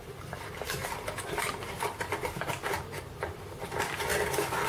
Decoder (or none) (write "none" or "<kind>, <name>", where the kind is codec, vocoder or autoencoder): none